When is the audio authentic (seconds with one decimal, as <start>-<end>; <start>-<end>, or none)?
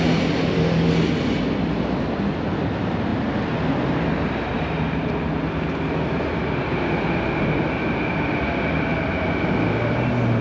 0.0-10.4